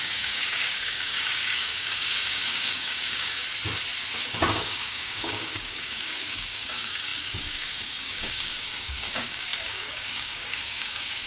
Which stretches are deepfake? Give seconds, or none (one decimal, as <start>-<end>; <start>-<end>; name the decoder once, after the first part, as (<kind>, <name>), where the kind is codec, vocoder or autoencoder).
0.0-3.4 (codec, DAC); 4.1-11.3